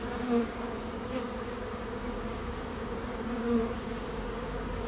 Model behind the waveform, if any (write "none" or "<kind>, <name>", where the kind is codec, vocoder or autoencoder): codec, DAC